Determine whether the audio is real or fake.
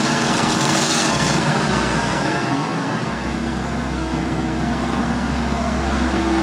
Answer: fake